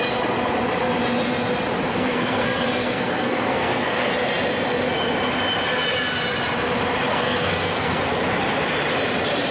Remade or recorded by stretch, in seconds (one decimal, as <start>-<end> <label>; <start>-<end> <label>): 0.0-1.9 recorded; 1.9-4.1 remade; 4.1-7.1 recorded; 7.1-8.0 remade; 8.0-9.5 recorded